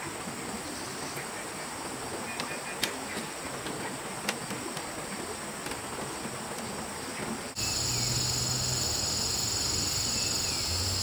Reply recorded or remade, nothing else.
recorded